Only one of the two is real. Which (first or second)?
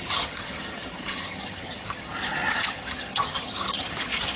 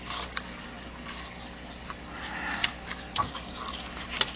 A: second